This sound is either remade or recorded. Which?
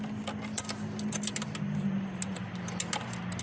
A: recorded